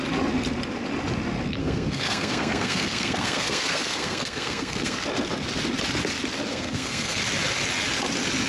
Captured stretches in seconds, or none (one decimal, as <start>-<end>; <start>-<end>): 0.0-1.6; 5.0-6.5; 7.2-8.5